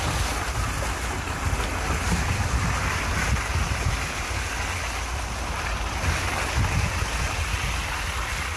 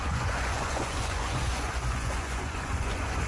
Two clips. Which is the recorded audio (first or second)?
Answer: first